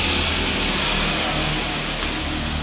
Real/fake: real